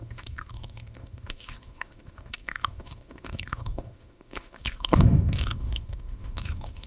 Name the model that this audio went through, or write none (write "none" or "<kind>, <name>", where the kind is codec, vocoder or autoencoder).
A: autoencoder, DAC-VAE